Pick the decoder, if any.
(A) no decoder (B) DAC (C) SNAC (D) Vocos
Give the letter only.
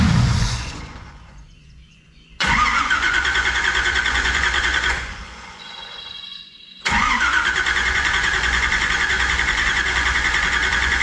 D